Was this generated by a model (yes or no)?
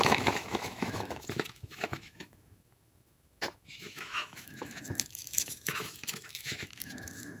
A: yes